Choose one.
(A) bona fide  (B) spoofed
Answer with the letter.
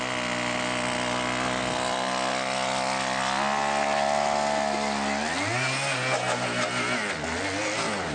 A